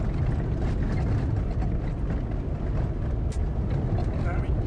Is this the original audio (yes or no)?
yes